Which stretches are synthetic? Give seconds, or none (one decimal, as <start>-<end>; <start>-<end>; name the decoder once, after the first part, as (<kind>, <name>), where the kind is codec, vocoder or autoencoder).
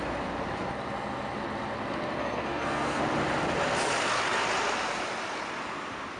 2.2-3.0 (codec, SNAC)